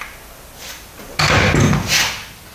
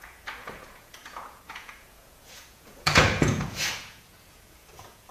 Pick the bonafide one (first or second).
first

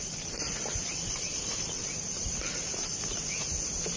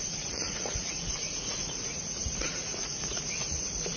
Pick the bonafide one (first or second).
first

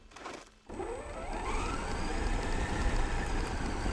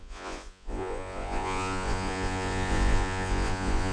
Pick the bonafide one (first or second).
first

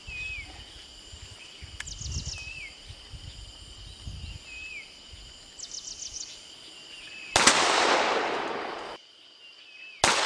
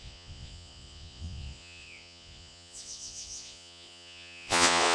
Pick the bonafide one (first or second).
first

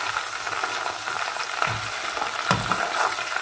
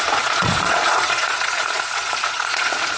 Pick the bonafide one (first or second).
first